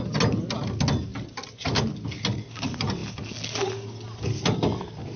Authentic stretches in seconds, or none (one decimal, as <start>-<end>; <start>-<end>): 0.0-5.2